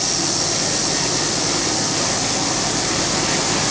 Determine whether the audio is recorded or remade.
recorded